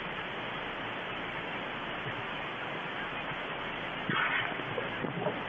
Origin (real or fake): real